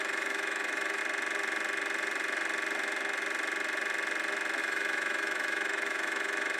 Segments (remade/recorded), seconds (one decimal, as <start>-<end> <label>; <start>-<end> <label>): 0.0-1.0 remade; 1.0-4.6 recorded; 4.6-6.6 remade